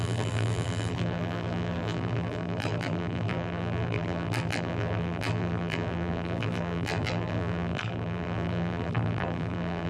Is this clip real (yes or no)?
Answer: no